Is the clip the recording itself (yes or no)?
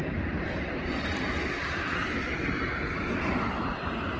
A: no